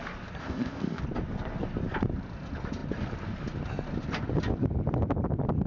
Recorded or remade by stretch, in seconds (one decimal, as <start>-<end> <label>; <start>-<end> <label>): 0.0-0.4 recorded; 0.4-1.0 remade; 1.0-5.7 recorded